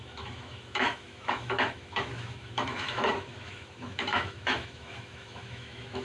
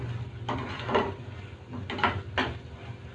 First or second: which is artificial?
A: first